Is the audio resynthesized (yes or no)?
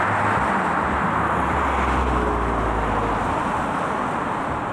no